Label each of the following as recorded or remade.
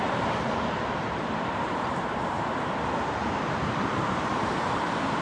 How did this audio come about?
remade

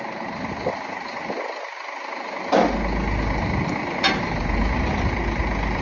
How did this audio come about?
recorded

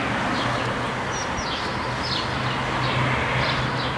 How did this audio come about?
recorded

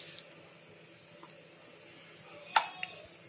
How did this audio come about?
recorded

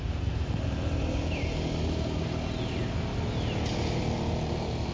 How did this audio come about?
recorded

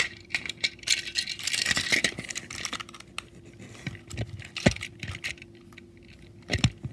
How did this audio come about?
recorded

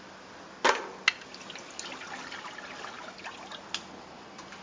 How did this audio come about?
recorded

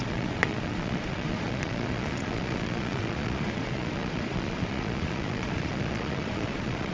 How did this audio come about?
remade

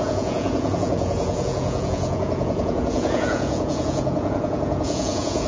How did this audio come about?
remade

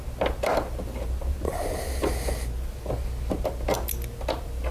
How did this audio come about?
recorded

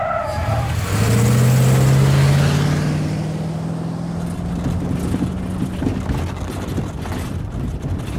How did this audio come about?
recorded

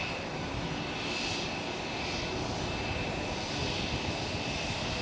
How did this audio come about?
recorded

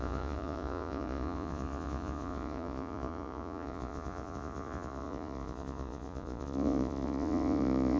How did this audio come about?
remade